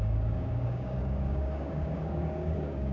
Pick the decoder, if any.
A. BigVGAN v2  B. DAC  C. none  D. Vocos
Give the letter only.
B